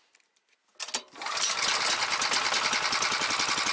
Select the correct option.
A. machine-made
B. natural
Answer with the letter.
B